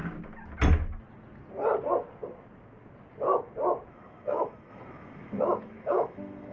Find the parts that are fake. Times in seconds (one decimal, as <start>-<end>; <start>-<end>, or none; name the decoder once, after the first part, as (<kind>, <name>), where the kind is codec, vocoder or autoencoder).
3.9-6.5 (autoencoder, DAC-VAE)